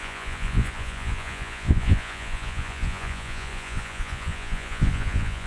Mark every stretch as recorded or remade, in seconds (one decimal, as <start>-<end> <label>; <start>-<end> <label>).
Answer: 0.0-5.5 remade